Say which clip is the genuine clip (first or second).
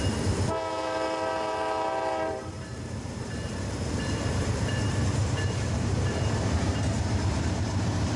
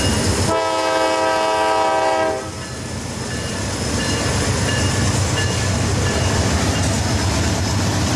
second